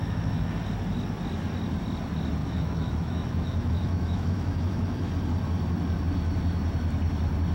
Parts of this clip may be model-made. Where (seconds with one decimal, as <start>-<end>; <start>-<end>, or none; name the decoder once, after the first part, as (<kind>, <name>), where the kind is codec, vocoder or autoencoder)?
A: 0.0-0.6 (autoencoder, DAC-VAE); 2.4-5.1